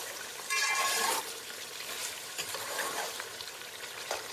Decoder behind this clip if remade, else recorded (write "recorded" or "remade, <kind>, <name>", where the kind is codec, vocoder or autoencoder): remade, vocoder, BigVGAN v2